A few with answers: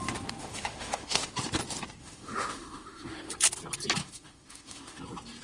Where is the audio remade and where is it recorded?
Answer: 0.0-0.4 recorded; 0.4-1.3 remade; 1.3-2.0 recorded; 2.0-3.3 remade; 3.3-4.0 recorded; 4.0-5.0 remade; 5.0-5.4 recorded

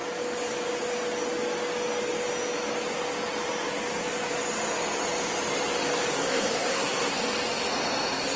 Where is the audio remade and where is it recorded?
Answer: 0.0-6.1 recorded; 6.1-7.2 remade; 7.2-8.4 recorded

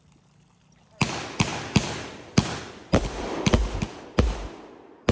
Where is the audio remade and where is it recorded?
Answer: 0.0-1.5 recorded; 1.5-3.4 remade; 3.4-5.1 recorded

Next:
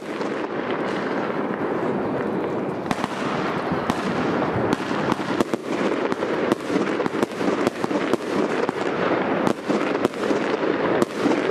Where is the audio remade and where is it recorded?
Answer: 0.0-5.6 recorded; 5.6-9.6 remade; 9.6-11.5 recorded

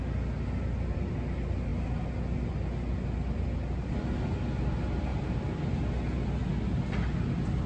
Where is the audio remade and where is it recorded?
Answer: 0.0-5.1 recorded; 5.1-5.6 remade; 5.6-7.7 recorded

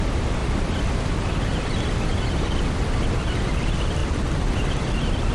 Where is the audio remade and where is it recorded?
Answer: 0.0-0.4 recorded; 0.4-2.1 remade; 2.1-4.0 recorded; 4.0-5.3 remade